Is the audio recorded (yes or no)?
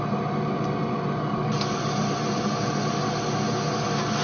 yes